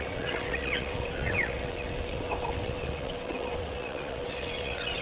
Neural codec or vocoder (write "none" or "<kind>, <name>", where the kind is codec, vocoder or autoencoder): vocoder, WaveNeXt